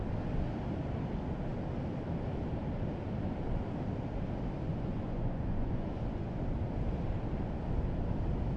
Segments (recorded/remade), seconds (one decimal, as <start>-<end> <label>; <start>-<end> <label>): 0.0-4.7 recorded; 4.7-6.4 remade; 6.4-8.6 recorded